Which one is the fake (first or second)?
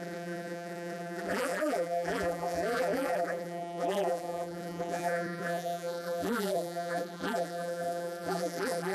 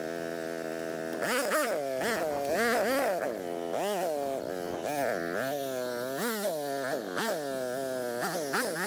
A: first